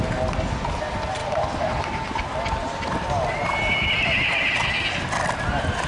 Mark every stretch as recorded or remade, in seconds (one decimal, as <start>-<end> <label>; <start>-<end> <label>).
0.0-5.9 recorded